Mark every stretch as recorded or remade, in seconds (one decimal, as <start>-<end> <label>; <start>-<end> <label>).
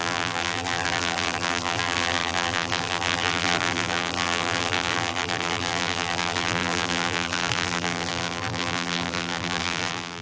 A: 0.0-10.2 remade